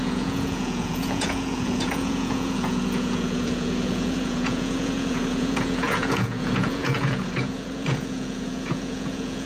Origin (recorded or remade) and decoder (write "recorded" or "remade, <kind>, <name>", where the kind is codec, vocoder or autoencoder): remade, vocoder, Vocos